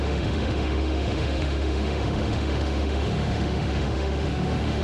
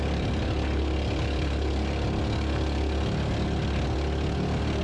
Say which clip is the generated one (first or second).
first